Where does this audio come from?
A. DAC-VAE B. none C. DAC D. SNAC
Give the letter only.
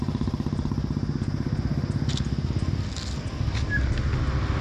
B